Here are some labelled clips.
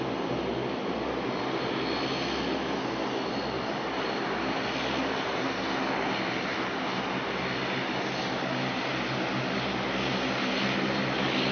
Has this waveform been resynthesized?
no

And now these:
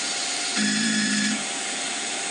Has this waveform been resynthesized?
yes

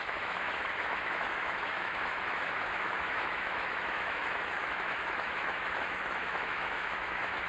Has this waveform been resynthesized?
yes